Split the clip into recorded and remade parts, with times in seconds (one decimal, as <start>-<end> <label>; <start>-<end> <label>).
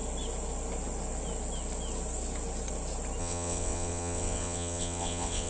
0.0-3.2 recorded; 3.2-5.5 remade